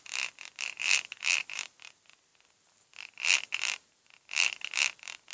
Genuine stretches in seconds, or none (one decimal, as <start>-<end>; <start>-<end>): 0.0-5.3